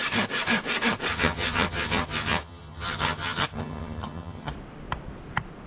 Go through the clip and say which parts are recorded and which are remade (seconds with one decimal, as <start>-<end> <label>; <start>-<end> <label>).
0.0-1.1 recorded; 1.1-4.5 remade; 4.5-5.7 recorded